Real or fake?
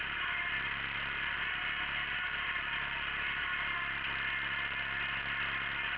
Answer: real